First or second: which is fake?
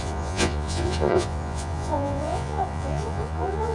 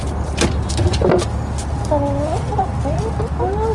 first